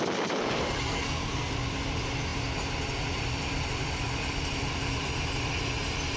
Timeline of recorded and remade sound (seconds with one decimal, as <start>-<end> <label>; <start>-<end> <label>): 0.0-0.9 recorded; 0.9-1.5 remade; 1.5-6.2 recorded